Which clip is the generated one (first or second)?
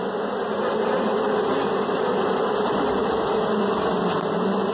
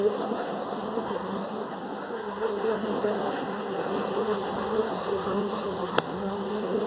second